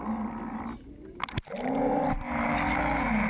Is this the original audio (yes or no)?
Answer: yes